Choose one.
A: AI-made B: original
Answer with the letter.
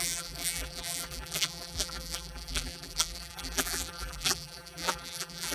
A